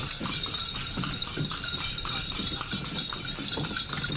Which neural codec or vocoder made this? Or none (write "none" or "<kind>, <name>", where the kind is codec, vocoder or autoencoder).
none